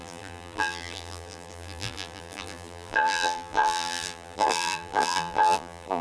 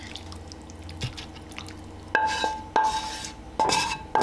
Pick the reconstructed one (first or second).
first